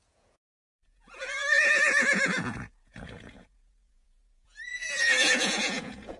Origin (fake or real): fake